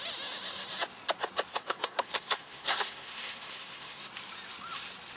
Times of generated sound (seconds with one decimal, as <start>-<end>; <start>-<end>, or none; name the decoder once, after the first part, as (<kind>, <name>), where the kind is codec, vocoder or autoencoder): 1.5-4.1 (codec, SNAC)